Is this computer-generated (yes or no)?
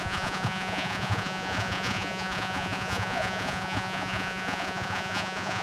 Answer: yes